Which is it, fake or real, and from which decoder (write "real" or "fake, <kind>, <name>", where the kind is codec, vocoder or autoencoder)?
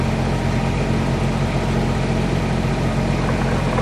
real